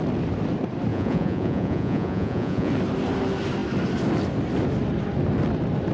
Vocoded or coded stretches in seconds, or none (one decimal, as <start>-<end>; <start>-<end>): 0.9-2.7